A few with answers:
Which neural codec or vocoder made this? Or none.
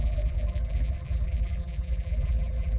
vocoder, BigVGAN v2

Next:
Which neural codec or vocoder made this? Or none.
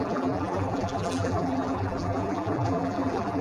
vocoder, BigVGAN v2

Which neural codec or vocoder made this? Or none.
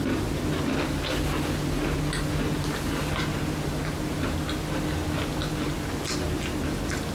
none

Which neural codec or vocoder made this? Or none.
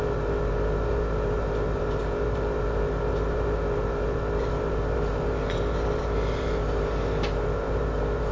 vocoder, BigVGAN v2